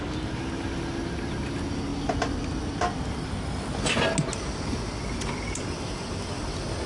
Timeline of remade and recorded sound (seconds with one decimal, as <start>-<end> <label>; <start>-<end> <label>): 0.0-6.9 recorded